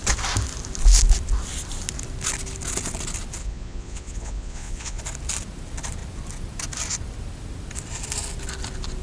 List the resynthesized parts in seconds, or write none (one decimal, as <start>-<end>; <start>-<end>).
3.4-5.0